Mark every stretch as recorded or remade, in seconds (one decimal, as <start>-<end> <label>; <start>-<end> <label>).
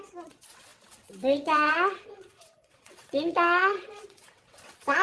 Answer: 0.0-5.0 remade